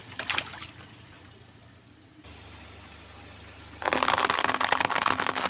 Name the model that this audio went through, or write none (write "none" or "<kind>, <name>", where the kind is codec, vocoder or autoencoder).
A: none